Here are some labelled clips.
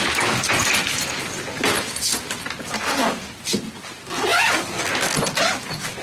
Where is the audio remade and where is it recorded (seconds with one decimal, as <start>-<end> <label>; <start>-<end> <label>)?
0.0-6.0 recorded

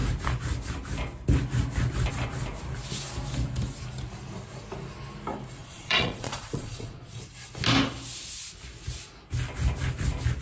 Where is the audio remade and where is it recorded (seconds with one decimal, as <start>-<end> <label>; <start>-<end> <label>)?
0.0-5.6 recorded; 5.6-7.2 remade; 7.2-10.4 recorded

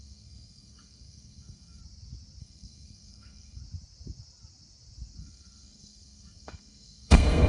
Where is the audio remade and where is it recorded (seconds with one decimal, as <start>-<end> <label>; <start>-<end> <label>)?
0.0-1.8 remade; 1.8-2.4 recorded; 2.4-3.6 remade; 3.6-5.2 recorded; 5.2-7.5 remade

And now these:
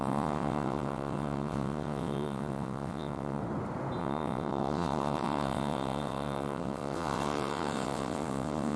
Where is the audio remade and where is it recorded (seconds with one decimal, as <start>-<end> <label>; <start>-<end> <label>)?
0.0-3.4 remade; 3.4-4.0 recorded; 4.0-8.8 remade

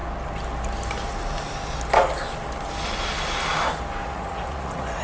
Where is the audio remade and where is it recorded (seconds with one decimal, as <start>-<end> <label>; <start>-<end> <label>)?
0.0-4.0 recorded; 4.0-5.0 remade

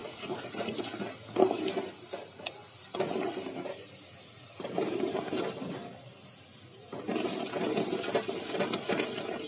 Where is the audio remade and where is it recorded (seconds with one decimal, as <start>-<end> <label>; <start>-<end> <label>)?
0.0-0.8 remade; 0.8-9.5 recorded